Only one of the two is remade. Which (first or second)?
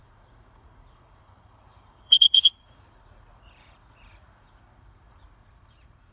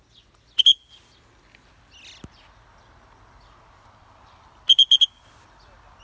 first